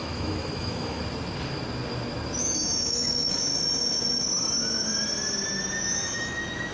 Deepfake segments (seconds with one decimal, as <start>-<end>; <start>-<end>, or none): 0.0-1.0; 2.4-3.5; 5.9-6.7